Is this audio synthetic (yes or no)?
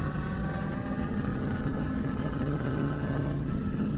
yes